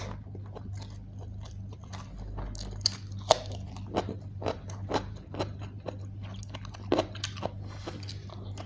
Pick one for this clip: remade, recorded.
recorded